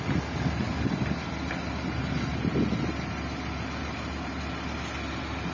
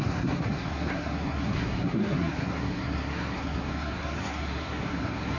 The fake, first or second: second